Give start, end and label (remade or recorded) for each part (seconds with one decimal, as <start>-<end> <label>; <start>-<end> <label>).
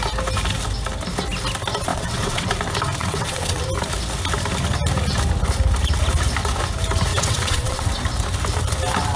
0.0-1.9 recorded; 1.9-2.5 remade; 2.5-3.0 recorded; 3.0-3.6 remade; 3.6-7.1 recorded; 7.1-7.9 remade; 7.9-9.2 recorded